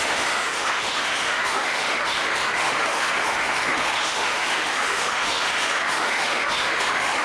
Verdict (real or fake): fake